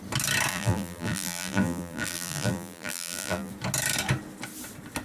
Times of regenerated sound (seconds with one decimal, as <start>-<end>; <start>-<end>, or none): 0.5-3.5